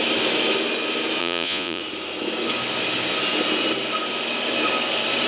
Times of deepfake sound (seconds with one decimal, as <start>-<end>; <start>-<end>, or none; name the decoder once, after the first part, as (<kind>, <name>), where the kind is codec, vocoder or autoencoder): 1.2-1.8 (vocoder, Vocos)

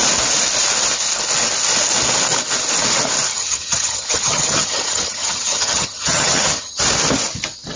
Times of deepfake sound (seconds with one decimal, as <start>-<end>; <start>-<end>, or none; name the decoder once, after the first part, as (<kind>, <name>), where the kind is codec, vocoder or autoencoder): 3.3-6.8 (vocoder, HiFi-GAN)